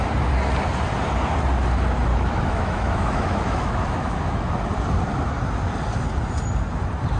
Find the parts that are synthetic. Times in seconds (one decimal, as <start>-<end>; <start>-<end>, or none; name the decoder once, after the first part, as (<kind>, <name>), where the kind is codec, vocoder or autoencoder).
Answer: 2.1-4.5 (autoencoder, DAC-VAE)